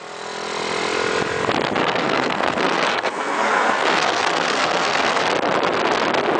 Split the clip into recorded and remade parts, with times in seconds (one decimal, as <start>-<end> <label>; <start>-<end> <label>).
0.0-1.8 recorded; 1.8-5.2 remade; 5.2-6.4 recorded